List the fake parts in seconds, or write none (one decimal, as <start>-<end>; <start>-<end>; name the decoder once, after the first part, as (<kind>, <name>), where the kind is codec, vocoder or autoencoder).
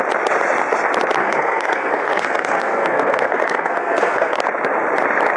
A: 1.2-4.4 (codec, SNAC)